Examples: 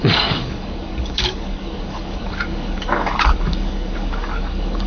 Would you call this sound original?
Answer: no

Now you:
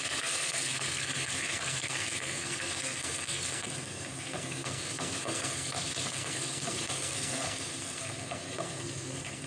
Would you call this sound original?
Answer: no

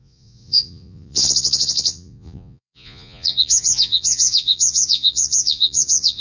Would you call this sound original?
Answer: no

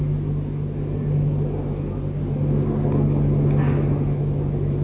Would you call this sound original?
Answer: yes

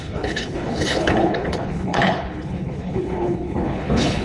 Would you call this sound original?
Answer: no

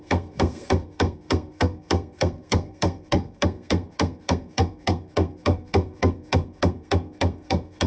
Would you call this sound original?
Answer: no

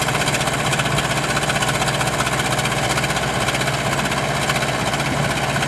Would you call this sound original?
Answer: yes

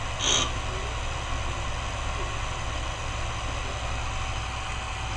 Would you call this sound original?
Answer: yes